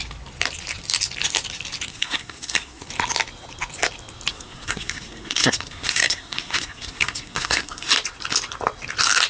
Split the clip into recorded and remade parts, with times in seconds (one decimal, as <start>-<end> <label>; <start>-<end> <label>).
0.0-1.9 recorded; 1.9-2.8 remade; 2.8-4.3 recorded; 4.3-7.9 remade; 7.9-9.3 recorded